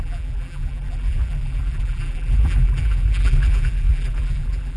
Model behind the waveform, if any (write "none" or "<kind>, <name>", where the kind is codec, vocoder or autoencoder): vocoder, BigVGAN v2